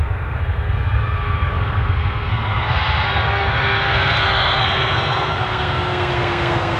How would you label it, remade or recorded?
remade